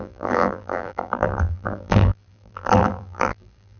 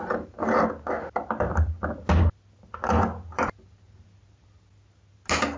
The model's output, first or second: first